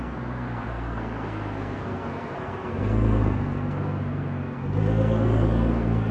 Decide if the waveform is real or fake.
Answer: fake